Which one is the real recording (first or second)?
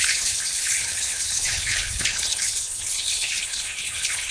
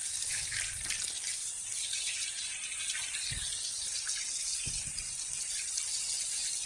second